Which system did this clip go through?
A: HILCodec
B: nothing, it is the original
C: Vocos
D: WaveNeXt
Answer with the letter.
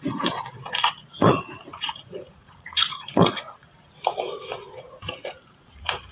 C